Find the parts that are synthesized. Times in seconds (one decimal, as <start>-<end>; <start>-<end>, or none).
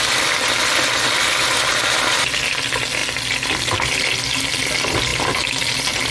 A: none